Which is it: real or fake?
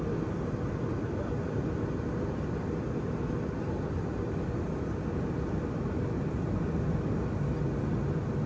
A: real